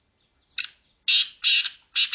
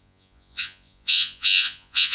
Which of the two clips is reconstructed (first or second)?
second